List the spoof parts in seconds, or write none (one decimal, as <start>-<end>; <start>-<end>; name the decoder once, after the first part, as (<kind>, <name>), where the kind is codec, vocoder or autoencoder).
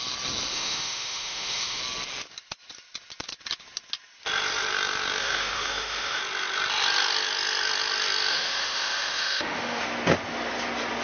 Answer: 0.5-1.8 (autoencoder, DAC-VAE); 5.2-6.2; 8.3-9.8